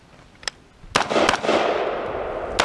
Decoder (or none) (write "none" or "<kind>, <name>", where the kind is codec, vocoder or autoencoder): none